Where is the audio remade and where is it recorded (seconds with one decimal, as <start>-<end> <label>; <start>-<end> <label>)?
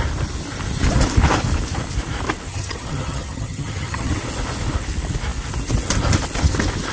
0.0-2.5 recorded; 2.5-4.1 remade; 4.1-6.9 recorded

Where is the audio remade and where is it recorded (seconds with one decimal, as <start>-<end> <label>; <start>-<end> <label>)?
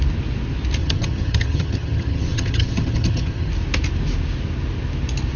0.0-0.8 recorded; 0.8-3.5 remade; 3.5-5.4 recorded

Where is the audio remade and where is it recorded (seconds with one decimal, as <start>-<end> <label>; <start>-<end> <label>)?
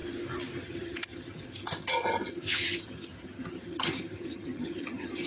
0.0-0.6 recorded; 0.6-5.3 remade